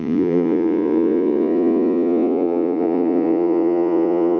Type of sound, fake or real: fake